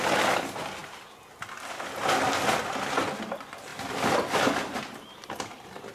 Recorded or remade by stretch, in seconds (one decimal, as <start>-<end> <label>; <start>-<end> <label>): 0.0-5.9 recorded